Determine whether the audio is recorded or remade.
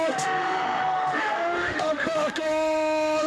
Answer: remade